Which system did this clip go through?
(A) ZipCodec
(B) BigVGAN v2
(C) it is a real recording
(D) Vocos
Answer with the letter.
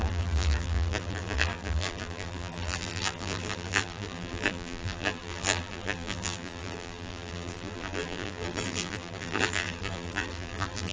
B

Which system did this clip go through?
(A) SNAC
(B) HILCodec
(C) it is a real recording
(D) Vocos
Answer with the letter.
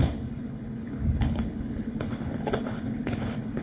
B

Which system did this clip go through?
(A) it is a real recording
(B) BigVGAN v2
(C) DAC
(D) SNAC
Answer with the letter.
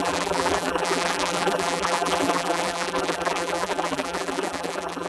B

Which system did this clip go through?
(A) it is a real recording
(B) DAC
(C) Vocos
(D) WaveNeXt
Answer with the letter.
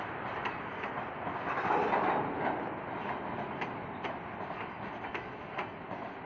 A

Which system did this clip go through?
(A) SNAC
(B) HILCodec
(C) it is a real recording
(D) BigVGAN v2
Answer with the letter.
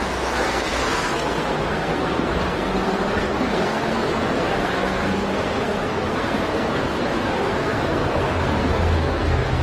A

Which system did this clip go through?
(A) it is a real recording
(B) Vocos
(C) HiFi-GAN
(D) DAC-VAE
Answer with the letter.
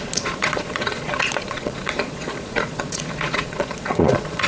B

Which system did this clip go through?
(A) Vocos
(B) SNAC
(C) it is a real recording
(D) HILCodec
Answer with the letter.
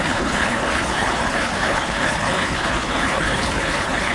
D